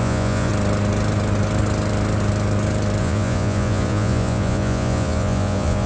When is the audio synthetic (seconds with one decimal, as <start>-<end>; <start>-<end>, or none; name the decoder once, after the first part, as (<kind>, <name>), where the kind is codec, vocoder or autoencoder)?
0.0-0.5 (vocoder, Vocos); 3.0-5.9